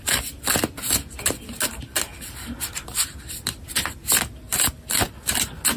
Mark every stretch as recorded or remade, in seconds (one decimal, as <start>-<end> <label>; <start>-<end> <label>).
0.0-5.8 recorded